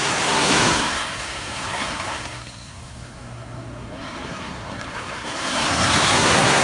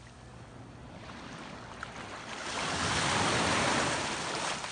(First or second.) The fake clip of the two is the first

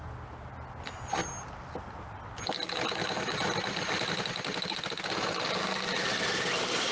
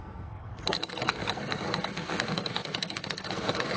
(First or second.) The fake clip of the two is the second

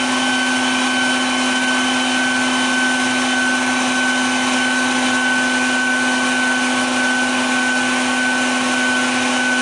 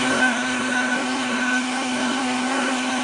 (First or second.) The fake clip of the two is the second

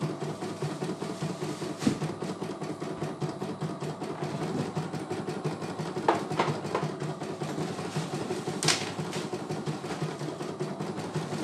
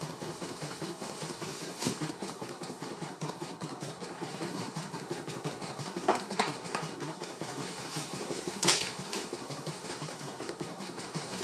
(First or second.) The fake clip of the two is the second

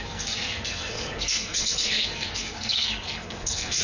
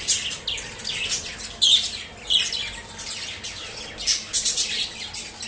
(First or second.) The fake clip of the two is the first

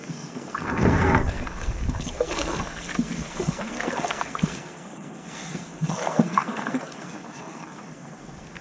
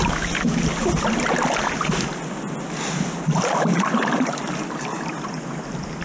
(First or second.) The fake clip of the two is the first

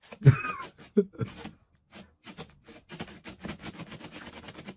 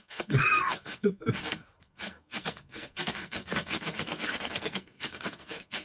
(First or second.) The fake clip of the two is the second